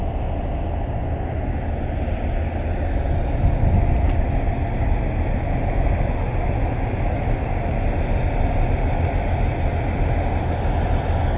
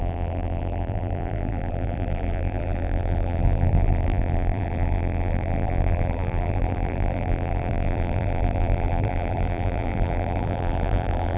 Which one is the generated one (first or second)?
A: second